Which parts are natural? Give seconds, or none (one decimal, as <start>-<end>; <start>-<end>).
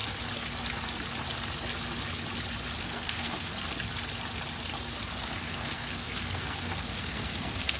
0.0-2.8; 3.5-5.2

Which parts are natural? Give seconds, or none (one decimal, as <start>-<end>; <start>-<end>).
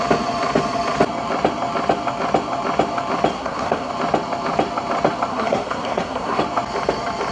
0.0-3.3; 3.9-5.3; 6.4-7.3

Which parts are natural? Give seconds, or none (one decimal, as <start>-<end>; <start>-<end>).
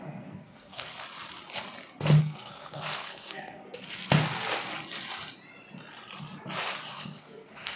0.9-2.2; 4.0-6.9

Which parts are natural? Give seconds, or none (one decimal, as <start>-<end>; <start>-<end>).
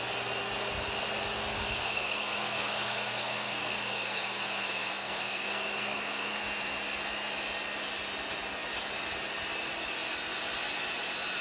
0.0-1.6; 6.4-11.4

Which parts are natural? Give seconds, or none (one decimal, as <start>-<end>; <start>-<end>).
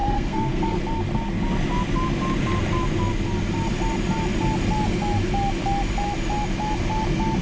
0.8-7.4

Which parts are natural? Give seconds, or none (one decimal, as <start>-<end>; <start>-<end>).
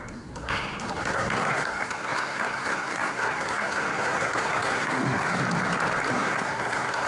5.4-6.1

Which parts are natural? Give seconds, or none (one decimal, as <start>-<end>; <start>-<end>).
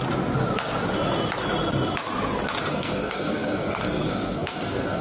0.0-2.7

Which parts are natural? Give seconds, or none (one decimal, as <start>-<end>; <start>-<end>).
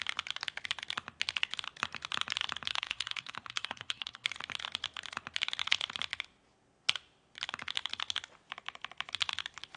0.0-2.7; 4.3-9.8